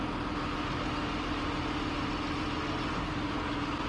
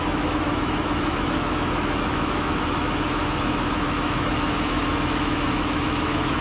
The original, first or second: first